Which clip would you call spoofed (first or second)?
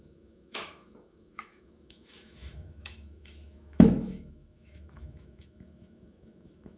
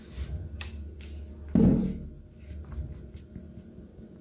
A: first